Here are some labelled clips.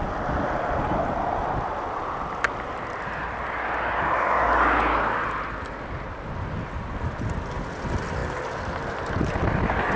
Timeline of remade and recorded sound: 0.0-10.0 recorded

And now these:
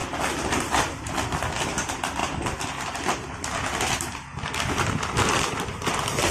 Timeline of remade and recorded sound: 0.0-6.3 recorded

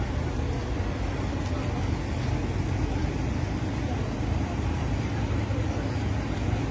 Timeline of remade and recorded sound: 0.0-6.7 recorded

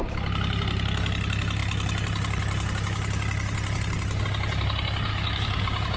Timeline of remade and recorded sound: 0.0-5.1 recorded; 5.1-5.6 remade; 5.6-6.0 recorded